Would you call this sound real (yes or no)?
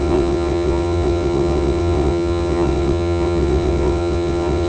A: no